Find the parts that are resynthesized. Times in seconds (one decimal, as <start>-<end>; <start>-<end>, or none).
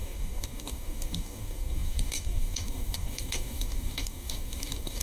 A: 0.0-5.0